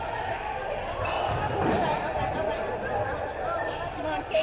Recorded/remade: recorded